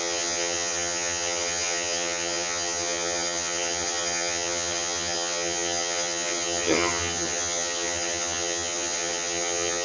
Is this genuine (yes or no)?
no